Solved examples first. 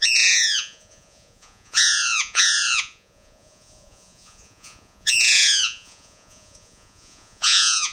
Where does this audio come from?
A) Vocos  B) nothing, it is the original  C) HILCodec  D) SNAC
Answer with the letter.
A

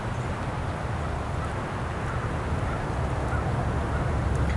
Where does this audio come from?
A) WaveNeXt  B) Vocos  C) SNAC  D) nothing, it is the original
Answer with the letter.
D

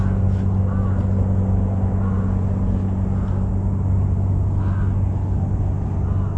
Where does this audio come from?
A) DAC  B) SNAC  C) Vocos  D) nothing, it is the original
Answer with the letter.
D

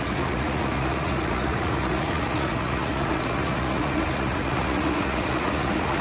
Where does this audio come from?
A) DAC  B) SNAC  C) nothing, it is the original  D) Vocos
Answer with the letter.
D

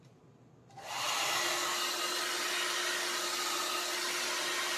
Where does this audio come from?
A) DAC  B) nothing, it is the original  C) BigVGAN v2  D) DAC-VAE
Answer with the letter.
B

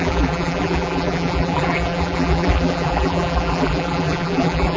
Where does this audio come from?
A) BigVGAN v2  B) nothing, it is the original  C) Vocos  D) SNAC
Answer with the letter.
A